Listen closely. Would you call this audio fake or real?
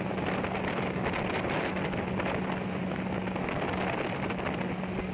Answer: real